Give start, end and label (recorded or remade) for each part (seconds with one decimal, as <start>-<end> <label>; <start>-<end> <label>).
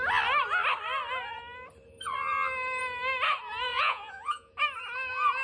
0.0-3.7 recorded; 3.7-4.5 remade; 4.5-5.4 recorded